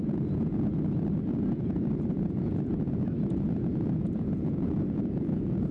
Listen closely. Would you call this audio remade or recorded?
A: remade